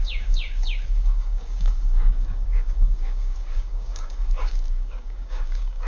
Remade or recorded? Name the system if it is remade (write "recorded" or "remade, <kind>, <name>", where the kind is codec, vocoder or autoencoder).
remade, codec, DAC